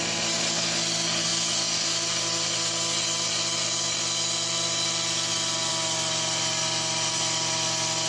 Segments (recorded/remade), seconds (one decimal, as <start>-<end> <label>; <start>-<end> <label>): 0.0-8.1 recorded